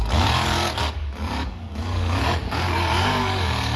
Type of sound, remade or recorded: remade